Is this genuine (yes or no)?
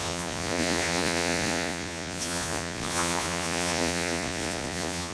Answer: no